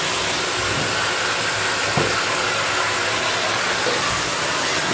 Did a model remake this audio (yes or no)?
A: no